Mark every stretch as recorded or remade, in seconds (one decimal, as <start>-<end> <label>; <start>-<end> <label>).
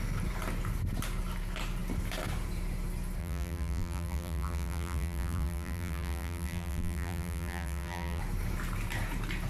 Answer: 0.0-3.2 recorded; 3.2-8.2 remade; 8.2-9.5 recorded